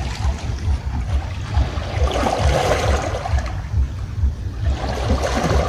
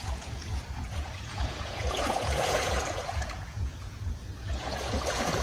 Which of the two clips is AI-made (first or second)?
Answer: second